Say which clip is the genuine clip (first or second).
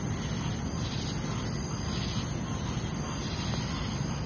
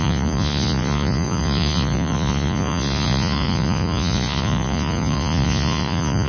first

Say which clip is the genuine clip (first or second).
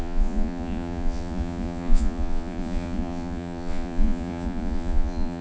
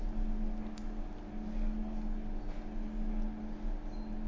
second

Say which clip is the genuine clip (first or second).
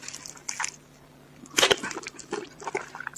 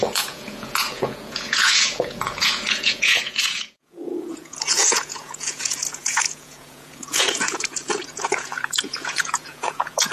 first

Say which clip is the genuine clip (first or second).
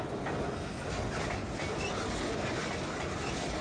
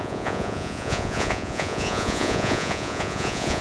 first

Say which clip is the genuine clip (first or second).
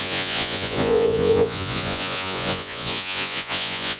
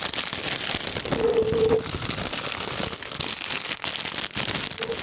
second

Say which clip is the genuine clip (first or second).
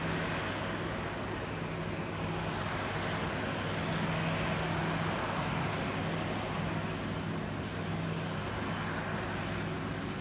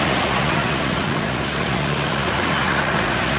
first